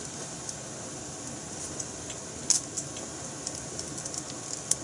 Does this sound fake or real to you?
real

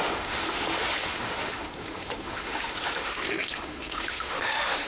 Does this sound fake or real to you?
fake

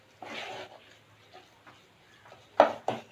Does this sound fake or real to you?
real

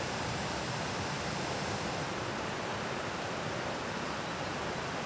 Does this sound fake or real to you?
fake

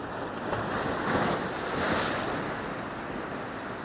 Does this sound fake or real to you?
real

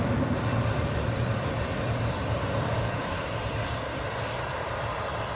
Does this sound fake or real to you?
fake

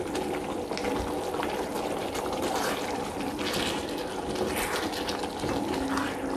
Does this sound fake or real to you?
real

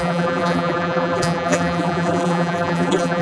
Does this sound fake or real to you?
fake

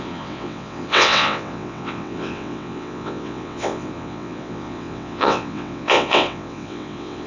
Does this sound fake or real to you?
fake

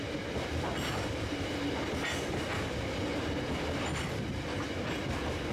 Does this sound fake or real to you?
real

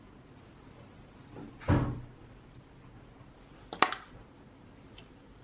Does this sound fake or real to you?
real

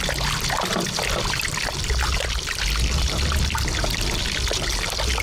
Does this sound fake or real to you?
real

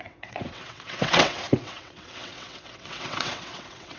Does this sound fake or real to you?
fake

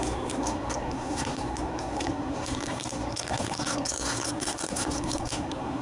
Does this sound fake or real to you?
fake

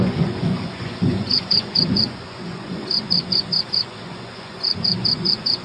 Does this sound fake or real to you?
fake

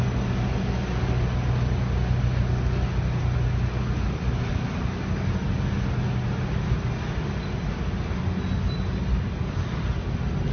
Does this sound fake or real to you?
real